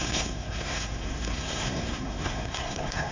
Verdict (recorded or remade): remade